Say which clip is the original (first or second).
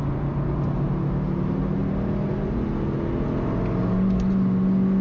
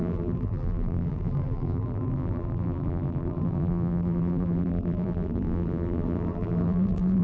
first